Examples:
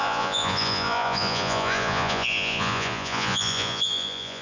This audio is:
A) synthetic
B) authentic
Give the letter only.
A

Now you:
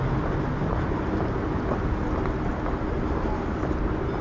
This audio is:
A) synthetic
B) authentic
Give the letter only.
B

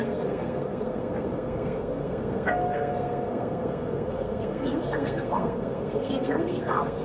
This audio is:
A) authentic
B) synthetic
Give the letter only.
B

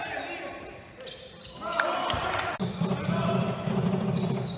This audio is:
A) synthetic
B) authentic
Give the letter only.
B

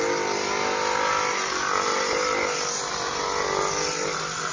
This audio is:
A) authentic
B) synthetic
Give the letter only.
A